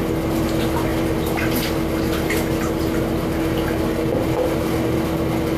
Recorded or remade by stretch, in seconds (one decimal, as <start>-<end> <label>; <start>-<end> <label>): 0.0-5.6 recorded